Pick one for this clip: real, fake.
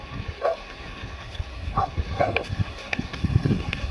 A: fake